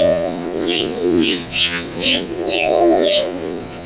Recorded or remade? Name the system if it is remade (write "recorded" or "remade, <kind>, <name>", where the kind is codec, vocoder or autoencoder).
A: remade, vocoder, Vocos